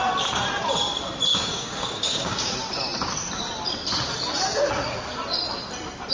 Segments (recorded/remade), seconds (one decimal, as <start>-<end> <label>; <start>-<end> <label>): 0.0-1.3 recorded; 1.3-2.5 remade; 2.5-6.1 recorded